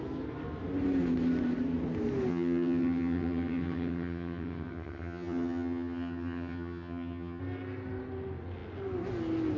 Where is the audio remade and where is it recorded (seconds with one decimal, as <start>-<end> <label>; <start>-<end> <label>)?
0.0-2.3 recorded; 2.3-7.4 remade; 7.4-9.6 recorded